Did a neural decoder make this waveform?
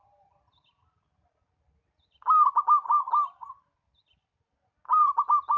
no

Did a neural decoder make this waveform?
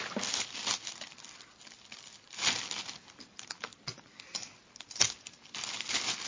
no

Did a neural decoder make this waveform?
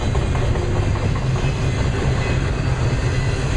no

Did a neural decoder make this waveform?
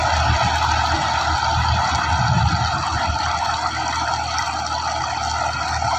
no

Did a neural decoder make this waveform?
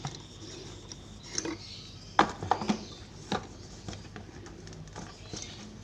no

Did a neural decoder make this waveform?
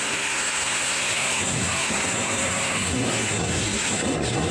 yes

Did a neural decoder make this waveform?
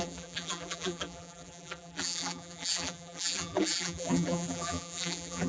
yes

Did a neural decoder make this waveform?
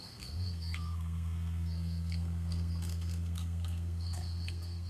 yes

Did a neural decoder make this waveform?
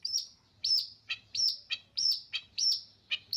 yes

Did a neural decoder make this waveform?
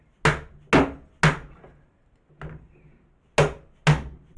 no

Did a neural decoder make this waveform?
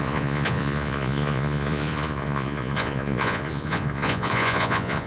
yes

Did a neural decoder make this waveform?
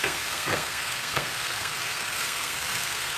yes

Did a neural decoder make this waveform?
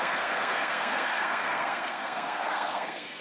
yes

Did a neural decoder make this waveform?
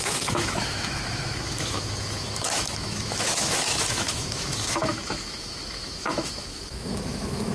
yes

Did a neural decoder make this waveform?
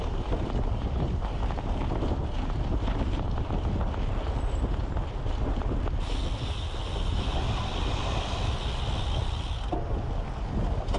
no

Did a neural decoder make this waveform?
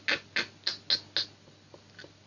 no